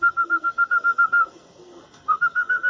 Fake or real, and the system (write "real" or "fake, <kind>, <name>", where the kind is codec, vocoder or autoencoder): fake, codec, SNAC